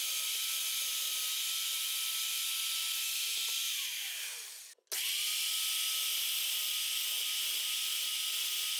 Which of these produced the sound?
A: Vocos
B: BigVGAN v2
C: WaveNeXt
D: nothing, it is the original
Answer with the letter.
D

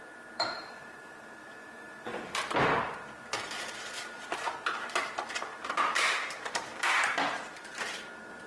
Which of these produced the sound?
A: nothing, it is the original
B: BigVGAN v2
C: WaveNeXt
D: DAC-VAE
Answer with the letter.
B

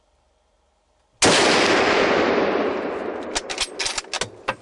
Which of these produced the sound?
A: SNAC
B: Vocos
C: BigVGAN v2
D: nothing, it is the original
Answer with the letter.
D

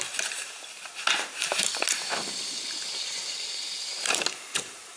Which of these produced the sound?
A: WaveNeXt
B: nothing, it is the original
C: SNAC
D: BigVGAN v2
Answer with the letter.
D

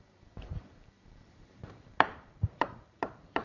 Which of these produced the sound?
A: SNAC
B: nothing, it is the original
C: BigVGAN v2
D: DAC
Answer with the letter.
C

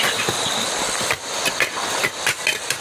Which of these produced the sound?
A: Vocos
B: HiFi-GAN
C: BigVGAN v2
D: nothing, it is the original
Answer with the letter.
D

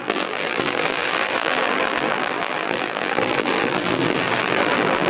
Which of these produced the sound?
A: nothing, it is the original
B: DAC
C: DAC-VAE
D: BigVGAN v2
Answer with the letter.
D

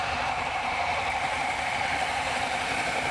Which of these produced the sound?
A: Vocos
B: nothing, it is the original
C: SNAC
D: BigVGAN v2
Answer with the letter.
D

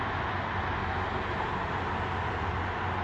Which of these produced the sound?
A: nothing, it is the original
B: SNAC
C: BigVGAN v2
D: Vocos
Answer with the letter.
A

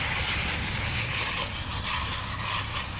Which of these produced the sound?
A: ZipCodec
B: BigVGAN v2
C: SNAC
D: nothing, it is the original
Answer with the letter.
B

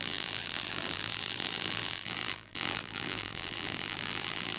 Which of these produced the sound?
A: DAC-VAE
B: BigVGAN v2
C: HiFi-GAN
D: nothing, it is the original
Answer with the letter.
B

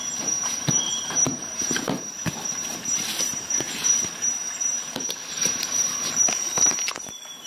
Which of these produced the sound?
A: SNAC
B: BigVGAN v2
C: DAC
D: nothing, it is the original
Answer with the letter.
B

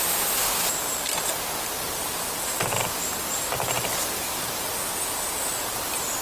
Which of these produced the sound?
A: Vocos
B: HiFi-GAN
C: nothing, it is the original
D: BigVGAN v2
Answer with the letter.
D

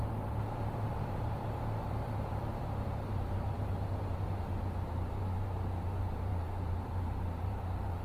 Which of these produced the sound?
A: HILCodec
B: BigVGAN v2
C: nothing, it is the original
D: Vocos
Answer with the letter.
B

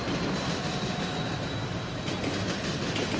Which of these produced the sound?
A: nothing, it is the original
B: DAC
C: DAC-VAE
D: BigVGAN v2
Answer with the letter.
A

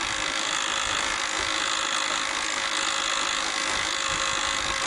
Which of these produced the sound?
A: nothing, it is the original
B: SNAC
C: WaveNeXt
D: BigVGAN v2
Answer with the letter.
A